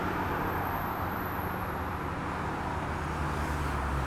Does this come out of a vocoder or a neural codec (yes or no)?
no